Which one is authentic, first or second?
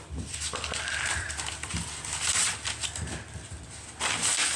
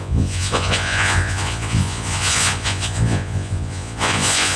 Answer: first